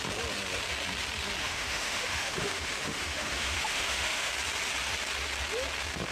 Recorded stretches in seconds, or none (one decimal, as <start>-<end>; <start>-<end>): 0.0-1.4; 4.3-6.1